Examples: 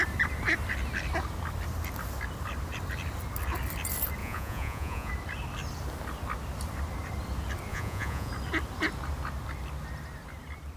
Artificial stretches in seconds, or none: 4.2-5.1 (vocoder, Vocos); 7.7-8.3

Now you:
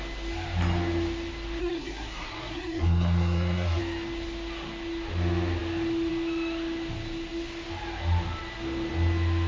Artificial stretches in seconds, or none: 1.6-3.8 (codec, SNAC)